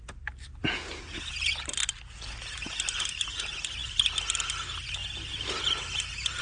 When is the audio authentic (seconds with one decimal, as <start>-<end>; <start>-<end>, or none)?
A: 0.0-0.6; 1.5-6.4

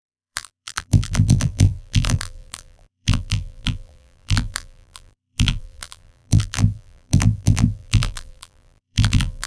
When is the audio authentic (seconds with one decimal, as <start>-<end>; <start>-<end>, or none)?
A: none

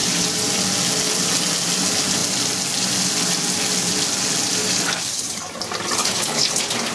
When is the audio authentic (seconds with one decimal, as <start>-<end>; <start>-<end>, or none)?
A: 0.0-4.6; 5.5-6.0; 6.5-6.9

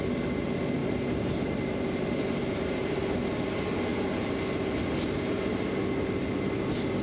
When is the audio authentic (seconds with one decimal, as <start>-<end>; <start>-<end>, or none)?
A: 0.0-0.8; 2.8-7.0